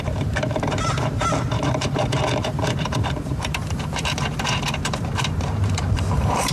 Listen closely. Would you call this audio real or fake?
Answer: fake